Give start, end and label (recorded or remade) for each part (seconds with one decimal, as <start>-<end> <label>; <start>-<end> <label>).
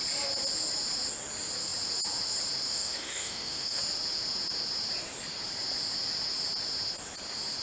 0.0-2.7 recorded; 2.7-3.8 remade; 3.8-7.6 recorded